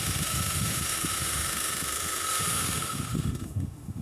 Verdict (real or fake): fake